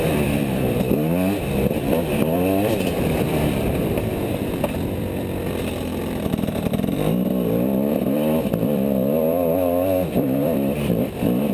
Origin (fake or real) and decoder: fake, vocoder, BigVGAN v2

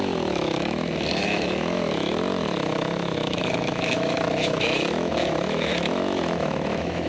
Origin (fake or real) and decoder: fake, autoencoder, DAC-VAE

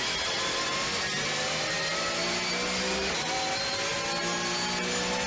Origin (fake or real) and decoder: real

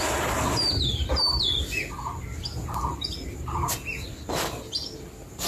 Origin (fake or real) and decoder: real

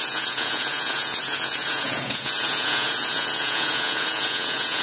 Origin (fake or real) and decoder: fake, vocoder, Vocos